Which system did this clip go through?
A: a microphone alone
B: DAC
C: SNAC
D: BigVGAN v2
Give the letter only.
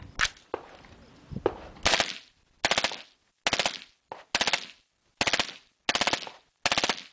A